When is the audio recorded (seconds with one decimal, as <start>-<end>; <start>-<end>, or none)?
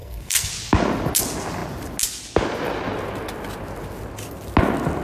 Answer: 0.5-5.0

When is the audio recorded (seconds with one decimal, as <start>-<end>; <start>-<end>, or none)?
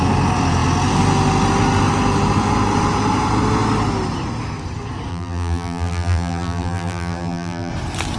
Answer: 0.0-5.1; 7.7-8.2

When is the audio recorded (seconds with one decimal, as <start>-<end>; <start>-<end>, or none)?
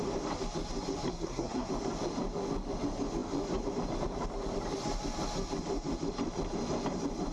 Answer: 0.0-1.1; 1.7-7.3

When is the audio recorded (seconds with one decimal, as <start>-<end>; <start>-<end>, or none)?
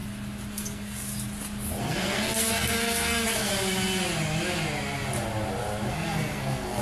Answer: 0.0-0.5; 1.1-1.8; 3.5-5.9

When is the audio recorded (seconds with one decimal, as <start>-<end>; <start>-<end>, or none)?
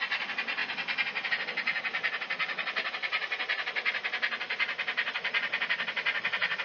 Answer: 0.0-6.6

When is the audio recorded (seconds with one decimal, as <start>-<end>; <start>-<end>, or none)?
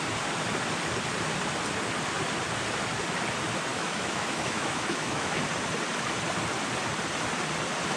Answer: 0.0-3.7; 5.4-8.0